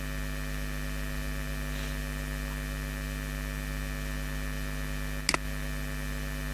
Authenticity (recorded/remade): recorded